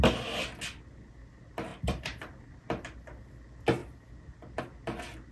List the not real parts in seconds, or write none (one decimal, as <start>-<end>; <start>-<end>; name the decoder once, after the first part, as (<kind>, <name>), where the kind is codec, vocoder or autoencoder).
1.7-3.0 (vocoder, BigVGAN v2); 3.8-4.6